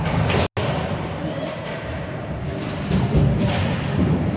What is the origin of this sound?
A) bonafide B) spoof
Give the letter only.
A